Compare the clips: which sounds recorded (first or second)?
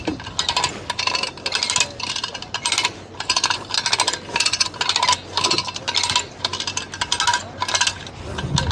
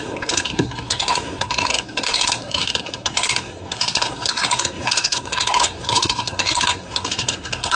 first